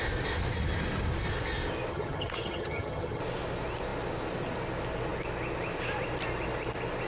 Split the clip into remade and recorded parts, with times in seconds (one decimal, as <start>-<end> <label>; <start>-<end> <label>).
0.0-1.9 recorded; 1.9-3.2 remade; 3.2-7.1 recorded